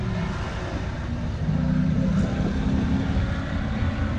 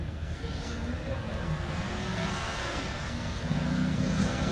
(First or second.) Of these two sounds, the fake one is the second